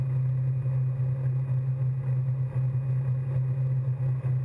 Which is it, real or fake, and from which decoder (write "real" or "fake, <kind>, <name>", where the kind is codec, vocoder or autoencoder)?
real